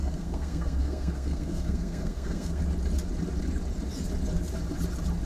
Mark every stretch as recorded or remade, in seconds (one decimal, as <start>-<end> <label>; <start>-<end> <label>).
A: 0.0-2.6 remade; 2.6-5.3 recorded